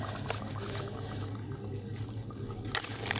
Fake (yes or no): no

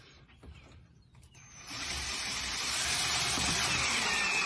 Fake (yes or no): yes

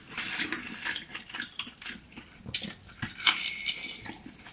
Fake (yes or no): no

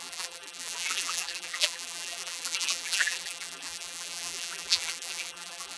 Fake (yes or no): yes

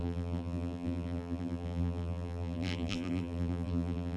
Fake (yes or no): yes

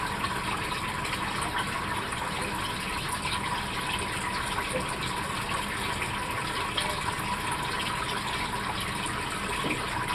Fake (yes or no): no